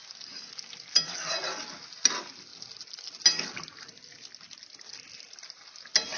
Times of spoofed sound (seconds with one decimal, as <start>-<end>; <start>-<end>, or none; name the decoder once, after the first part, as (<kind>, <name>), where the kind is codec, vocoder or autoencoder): none